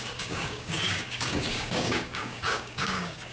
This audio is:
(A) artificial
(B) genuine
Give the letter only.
A